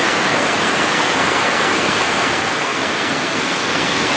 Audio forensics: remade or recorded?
remade